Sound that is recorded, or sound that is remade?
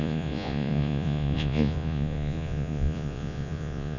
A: remade